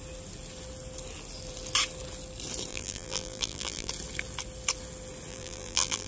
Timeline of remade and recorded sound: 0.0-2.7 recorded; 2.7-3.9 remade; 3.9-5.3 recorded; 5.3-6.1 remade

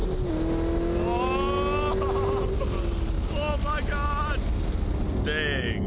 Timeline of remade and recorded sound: 0.0-5.9 recorded

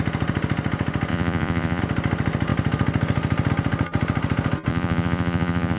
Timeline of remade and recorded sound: 0.0-1.1 recorded; 1.1-1.8 remade; 1.8-4.7 recorded; 4.7-5.8 remade

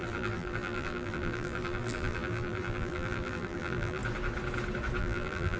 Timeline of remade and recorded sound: 0.0-4.0 remade; 4.0-5.0 recorded; 5.0-5.6 remade

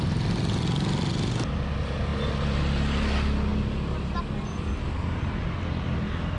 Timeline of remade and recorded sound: 0.0-6.4 recorded

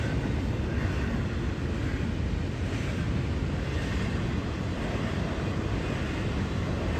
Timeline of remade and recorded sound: 0.0-7.0 recorded

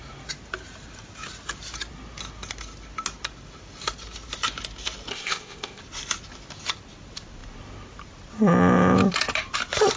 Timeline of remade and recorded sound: 0.0-5.1 recorded; 5.1-5.8 remade; 5.8-10.0 recorded